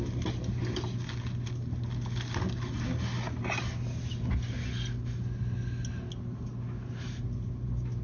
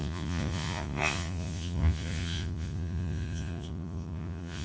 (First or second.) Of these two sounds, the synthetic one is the second